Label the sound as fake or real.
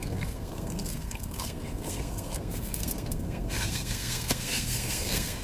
fake